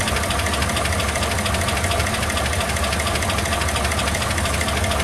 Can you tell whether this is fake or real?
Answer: real